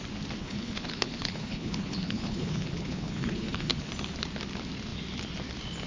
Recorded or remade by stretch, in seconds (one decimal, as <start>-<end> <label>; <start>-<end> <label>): 0.0-0.4 recorded; 0.4-3.9 remade; 3.9-5.9 recorded